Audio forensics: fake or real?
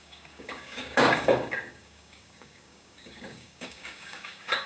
fake